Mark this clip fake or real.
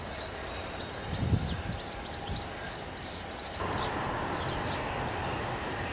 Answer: real